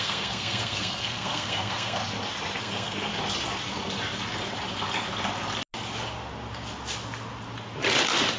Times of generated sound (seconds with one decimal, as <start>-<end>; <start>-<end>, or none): 0.0-2.0; 2.6-3.1